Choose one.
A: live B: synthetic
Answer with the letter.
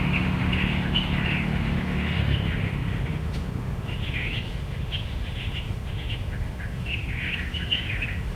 B